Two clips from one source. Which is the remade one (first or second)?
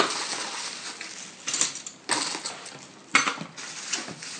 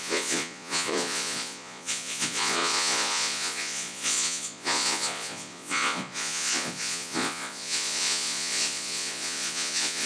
second